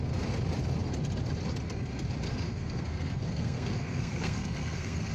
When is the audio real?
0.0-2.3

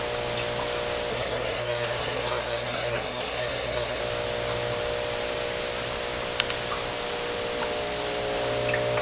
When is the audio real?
0.0-1.1; 4.0-9.0

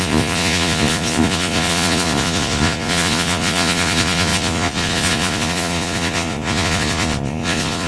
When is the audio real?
none

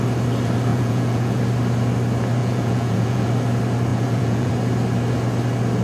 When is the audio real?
0.0-0.7; 1.4-2.4; 3.3-3.9; 4.5-5.8

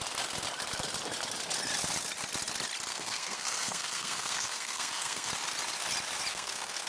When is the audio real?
0.0-2.9; 5.3-6.3

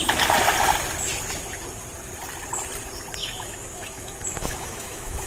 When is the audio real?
0.0-3.2

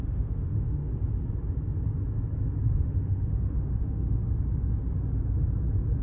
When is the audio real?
0.9-2.7; 4.2-6.0